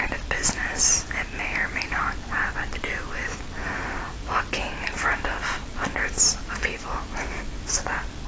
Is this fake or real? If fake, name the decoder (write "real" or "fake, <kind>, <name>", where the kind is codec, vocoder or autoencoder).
real